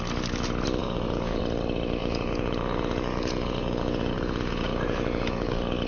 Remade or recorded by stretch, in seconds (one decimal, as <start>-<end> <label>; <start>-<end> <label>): 0.0-0.8 recorded; 0.8-1.4 remade; 1.4-2.0 recorded; 2.0-5.5 remade; 5.5-5.9 recorded